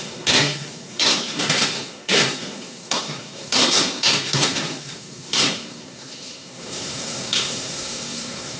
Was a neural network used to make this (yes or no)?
yes